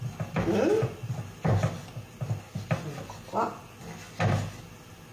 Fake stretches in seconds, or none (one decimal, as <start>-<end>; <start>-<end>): none